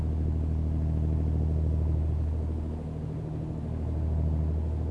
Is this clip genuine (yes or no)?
yes